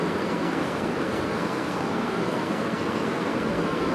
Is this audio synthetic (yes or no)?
yes